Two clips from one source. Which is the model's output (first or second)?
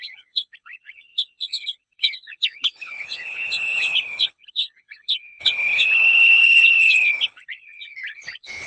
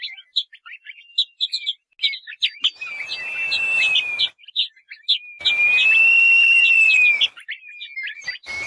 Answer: first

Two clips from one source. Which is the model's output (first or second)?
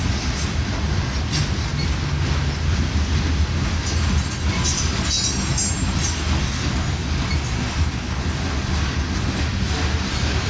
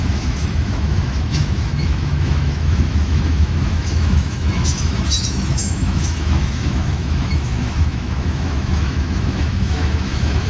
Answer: second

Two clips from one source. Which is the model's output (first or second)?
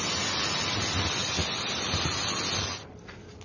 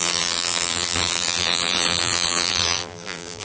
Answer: second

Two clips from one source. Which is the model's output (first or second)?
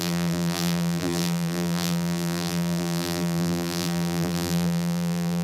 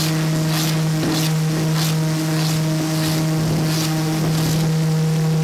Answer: first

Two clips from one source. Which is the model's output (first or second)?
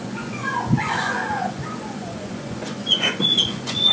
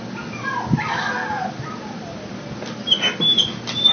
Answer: first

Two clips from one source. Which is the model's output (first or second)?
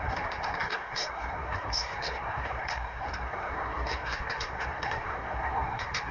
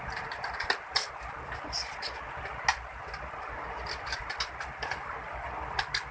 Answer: first